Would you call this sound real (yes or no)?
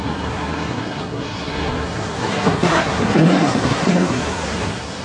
no